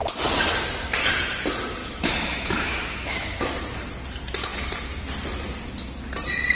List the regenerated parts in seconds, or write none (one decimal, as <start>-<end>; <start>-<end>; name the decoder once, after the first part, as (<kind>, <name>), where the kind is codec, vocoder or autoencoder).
1.8-3.5 (autoencoder, DAC-VAE)

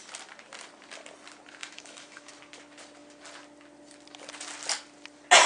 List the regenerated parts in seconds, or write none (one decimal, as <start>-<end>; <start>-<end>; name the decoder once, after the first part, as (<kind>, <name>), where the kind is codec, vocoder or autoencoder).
1.6-2.3 (autoencoder, DAC-VAE)

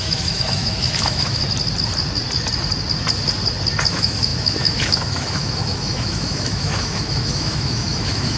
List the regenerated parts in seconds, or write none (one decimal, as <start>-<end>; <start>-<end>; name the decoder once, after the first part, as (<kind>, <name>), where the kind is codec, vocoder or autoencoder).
0.0-1.4 (autoencoder, DAC-VAE); 3.9-8.4

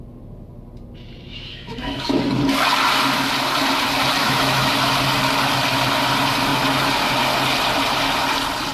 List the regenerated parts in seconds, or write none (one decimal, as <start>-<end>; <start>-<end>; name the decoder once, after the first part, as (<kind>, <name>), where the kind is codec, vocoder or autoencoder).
1.3-2.2 (autoencoder, DAC-VAE); 4.2-4.7

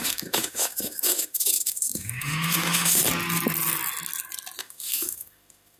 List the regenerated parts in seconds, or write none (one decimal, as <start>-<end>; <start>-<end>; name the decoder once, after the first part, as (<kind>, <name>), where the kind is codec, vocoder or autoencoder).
0.0-3.0 (autoencoder, DAC-VAE); 4.6-5.8